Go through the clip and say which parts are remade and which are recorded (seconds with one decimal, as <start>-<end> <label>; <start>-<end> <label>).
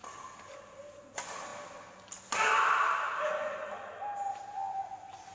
0.0-5.3 recorded